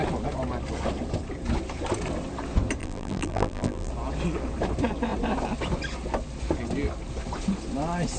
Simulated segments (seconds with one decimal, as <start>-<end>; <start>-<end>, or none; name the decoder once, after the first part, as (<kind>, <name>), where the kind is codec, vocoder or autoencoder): 2.8-3.9 (vocoder, BigVGAN v2)